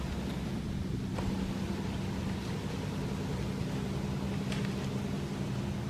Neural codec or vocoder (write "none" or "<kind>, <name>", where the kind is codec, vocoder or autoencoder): none